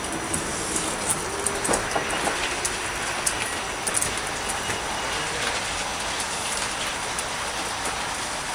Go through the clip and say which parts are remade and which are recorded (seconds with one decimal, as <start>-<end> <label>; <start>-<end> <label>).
0.0-8.5 recorded

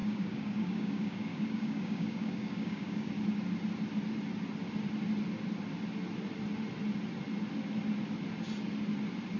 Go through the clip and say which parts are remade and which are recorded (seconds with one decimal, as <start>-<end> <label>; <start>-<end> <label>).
0.0-3.1 remade; 3.1-9.4 recorded

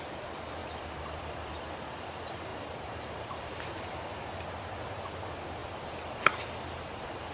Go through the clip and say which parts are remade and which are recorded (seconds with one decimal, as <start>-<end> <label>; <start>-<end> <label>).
0.0-2.5 recorded; 2.5-4.4 remade; 4.4-7.3 recorded

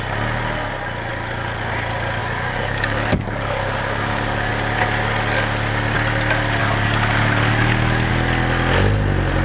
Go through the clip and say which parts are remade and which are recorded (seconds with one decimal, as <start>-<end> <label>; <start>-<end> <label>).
0.0-1.1 recorded; 1.1-1.6 remade; 1.6-2.2 recorded; 2.2-4.5 remade; 4.5-6.6 recorded; 6.6-8.1 remade; 8.1-9.4 recorded

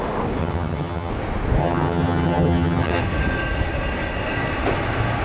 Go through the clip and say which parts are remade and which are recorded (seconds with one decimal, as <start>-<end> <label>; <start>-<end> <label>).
0.0-0.4 recorded; 0.4-1.1 remade; 1.1-1.6 recorded; 1.6-3.0 remade; 3.0-5.2 recorded